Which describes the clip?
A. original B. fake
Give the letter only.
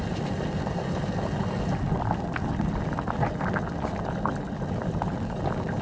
A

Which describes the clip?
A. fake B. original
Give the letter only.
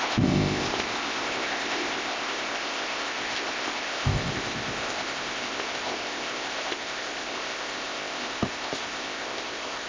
A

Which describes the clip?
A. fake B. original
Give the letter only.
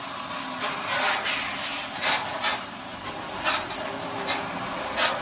B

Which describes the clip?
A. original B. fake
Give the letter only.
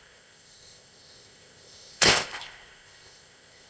B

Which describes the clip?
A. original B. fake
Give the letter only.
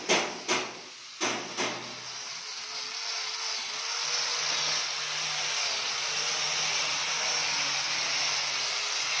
A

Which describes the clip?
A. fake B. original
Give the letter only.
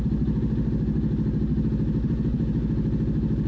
B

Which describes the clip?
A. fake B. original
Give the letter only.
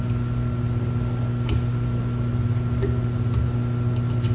B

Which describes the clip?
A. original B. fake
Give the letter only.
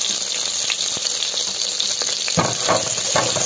A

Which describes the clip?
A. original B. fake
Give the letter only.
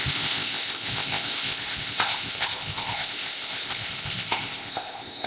B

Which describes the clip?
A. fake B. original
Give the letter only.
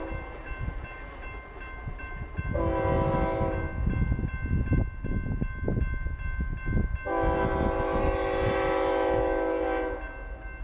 B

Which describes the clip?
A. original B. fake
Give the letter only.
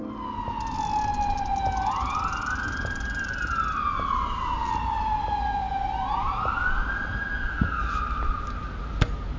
A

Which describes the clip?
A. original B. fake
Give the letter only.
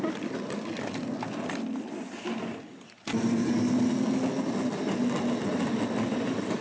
A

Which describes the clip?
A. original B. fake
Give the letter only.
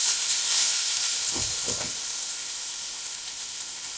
B